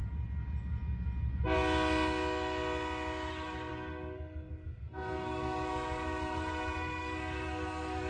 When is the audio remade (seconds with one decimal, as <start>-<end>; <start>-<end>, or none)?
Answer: 3.3-8.1